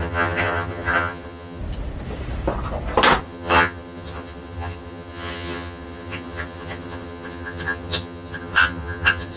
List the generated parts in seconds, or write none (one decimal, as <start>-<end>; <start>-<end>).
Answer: 0.0-1.6; 3.2-9.4